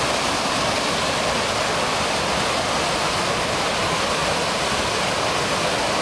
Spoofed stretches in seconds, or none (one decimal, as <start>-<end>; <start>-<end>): none